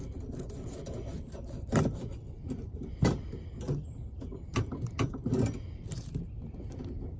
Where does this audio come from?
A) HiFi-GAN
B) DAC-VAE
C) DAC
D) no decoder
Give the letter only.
D